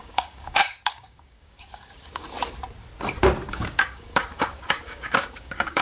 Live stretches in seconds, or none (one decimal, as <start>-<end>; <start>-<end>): 2.2-3.5